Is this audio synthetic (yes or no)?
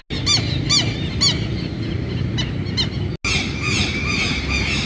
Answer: no